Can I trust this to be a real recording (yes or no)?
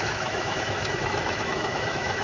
no